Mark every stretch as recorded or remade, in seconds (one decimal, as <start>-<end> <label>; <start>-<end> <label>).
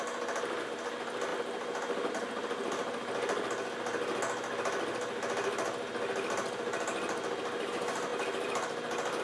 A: 0.0-9.2 recorded